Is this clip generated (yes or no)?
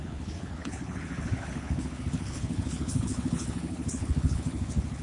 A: yes